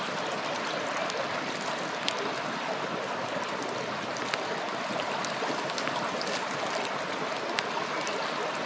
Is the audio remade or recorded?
recorded